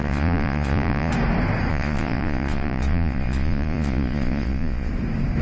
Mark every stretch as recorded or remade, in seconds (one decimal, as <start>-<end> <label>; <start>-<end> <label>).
0.0-1.1 remade; 1.1-1.7 recorded; 1.7-4.9 remade; 4.9-5.4 recorded